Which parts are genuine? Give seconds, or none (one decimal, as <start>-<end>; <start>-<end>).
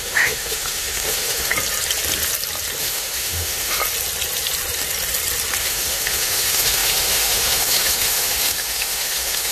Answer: 1.5-2.8; 3.8-5.6